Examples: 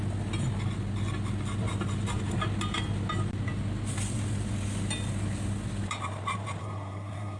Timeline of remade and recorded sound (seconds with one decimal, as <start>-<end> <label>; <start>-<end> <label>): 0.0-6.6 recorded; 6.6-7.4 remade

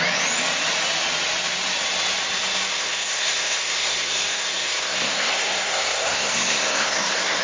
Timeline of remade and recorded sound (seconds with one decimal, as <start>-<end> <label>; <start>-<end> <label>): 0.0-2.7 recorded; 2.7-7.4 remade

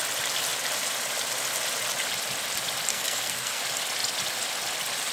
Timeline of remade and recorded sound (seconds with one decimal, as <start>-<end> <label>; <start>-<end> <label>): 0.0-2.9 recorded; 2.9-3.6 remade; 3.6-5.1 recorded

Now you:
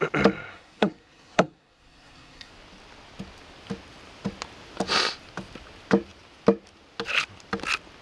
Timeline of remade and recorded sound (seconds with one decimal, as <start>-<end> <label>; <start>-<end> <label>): 0.0-0.5 recorded; 0.5-2.5 remade; 2.5-8.0 recorded